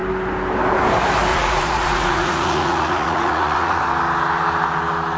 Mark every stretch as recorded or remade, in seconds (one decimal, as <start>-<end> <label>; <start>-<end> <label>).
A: 0.0-1.3 recorded; 1.3-3.8 remade; 3.8-5.2 recorded